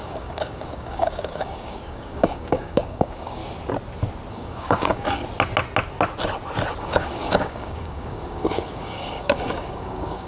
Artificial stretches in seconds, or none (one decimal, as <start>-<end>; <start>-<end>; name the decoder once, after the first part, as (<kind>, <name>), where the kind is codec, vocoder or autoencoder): 0.0-3.4 (codec, DAC); 4.3-5.2; 6.8-10.3

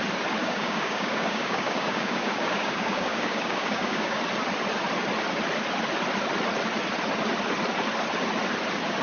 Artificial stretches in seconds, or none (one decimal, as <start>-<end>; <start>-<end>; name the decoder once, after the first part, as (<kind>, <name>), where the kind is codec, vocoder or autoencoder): 0.4-4.2 (codec, DAC)